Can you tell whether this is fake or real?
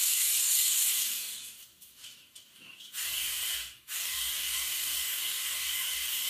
fake